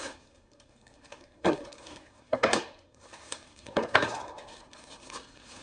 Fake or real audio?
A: fake